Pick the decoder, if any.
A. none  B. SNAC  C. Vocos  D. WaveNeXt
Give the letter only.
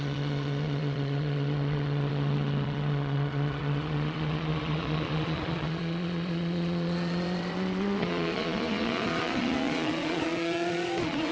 C